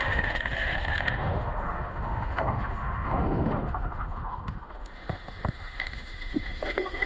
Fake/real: fake